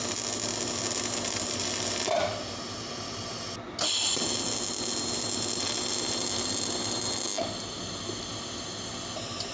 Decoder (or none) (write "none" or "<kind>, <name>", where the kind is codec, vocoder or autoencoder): none